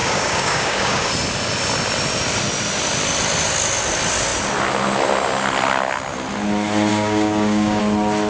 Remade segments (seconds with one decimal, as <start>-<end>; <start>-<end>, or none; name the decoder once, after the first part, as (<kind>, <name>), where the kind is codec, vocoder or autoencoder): 0.0-1.1 (codec, DAC); 6.9-7.8